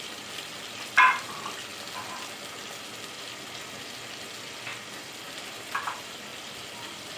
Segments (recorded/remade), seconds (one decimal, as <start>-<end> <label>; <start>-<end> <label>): 0.0-7.2 recorded